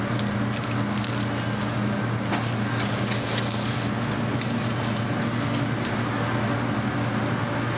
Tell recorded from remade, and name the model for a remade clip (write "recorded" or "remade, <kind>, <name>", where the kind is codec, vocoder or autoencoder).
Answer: recorded